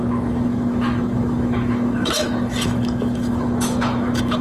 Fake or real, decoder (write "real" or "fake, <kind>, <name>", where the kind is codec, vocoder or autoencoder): fake, autoencoder, DAC-VAE